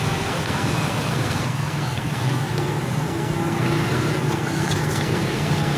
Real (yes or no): no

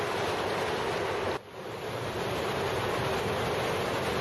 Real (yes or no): yes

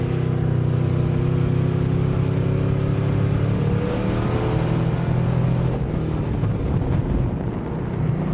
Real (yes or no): yes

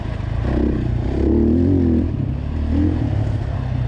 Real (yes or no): yes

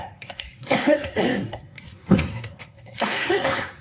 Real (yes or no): no